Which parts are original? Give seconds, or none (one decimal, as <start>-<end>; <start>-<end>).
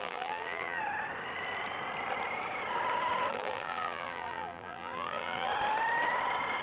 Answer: 0.8-3.3; 5.5-6.6